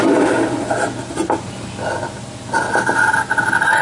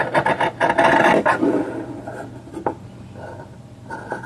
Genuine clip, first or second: first